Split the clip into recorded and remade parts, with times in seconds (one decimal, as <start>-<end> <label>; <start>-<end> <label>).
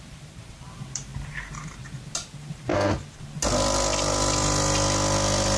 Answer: 0.0-2.7 remade; 2.7-5.6 recorded